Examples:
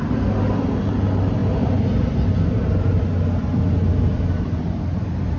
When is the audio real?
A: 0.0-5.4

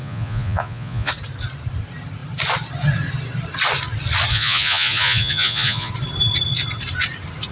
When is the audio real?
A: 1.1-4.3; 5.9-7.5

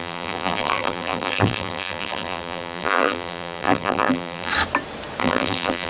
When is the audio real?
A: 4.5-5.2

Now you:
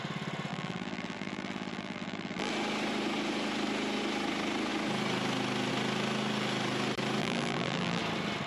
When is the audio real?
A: 0.0-0.5; 2.5-7.2; 8.0-8.5

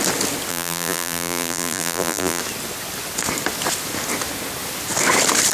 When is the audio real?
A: 0.0-0.5; 2.4-5.5

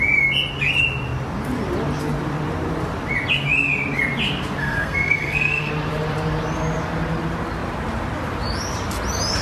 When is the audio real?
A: 0.0-4.6; 5.7-9.4